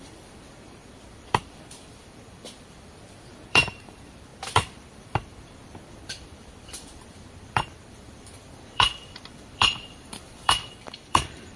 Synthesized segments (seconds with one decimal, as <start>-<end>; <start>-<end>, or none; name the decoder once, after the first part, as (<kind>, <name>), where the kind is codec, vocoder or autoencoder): 0.0-11.6 (vocoder, BigVGAN v2)